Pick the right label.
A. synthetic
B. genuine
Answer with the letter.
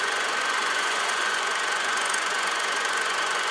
A